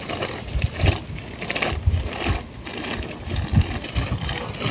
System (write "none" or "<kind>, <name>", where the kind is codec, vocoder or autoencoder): none